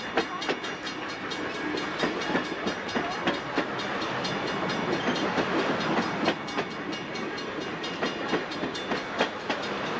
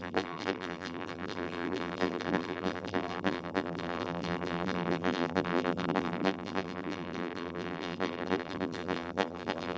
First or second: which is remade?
second